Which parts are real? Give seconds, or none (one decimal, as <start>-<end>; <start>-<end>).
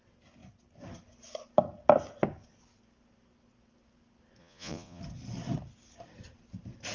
0.0-4.4; 5.0-6.9